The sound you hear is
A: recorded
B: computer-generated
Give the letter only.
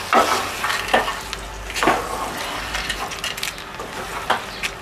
A